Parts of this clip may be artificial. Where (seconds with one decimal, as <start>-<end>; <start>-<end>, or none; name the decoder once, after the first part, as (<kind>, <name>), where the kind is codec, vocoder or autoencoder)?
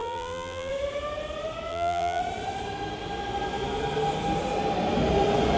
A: 0.0-0.7 (vocoder, BigVGAN v2); 1.7-2.2